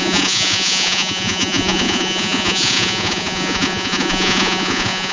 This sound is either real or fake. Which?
fake